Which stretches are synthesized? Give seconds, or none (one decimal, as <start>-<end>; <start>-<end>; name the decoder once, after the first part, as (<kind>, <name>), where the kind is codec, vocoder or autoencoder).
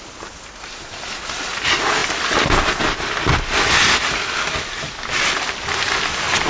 none